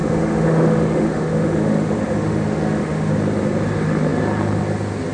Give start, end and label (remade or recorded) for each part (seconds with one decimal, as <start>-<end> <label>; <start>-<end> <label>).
0.0-3.1 remade; 3.1-5.1 recorded